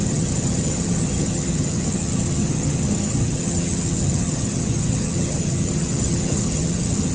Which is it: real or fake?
fake